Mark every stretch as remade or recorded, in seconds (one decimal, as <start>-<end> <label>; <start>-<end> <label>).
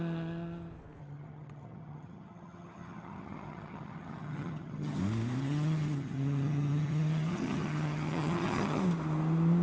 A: 0.0-1.0 recorded; 1.0-5.0 remade; 5.0-5.4 recorded; 5.4-8.8 remade; 8.8-9.6 recorded